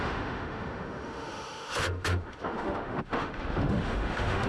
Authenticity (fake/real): fake